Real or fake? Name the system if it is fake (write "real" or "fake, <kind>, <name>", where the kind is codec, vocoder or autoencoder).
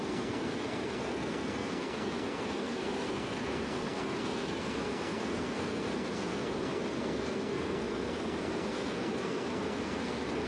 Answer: fake, codec, SNAC